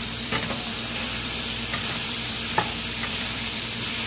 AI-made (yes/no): yes